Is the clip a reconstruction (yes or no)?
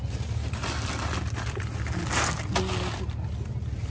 no